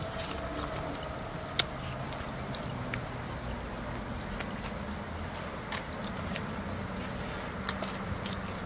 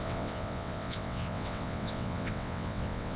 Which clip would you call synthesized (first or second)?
second